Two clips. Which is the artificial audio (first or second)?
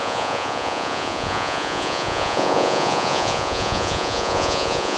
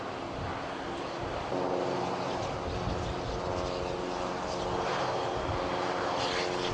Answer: first